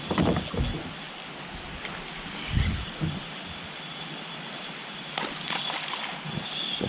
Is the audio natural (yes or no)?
yes